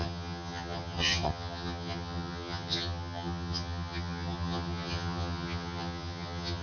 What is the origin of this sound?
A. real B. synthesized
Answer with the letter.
B